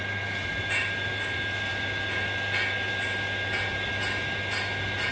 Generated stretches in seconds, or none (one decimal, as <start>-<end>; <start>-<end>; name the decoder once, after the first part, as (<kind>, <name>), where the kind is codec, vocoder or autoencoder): none